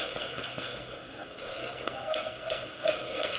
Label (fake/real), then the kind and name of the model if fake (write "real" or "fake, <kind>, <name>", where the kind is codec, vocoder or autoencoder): fake, codec, SNAC